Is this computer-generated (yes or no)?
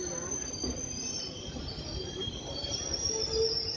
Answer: no